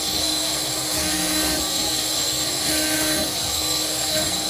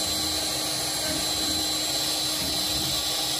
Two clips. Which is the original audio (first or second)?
second